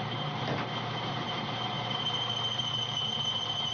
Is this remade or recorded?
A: remade